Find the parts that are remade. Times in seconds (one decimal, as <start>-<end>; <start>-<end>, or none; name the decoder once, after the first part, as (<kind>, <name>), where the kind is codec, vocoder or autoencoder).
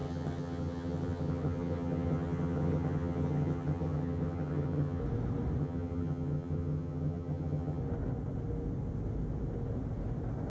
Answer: 0.0-5.0 (vocoder, HiFi-GAN); 5.6-7.8